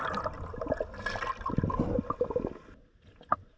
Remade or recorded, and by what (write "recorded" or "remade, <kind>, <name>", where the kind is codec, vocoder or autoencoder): recorded